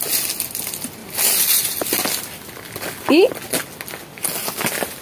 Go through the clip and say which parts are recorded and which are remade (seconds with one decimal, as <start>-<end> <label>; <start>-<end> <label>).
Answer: 0.0-5.0 recorded